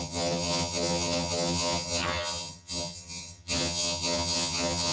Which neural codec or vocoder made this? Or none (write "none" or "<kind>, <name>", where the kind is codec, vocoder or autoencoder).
vocoder, HiFi-GAN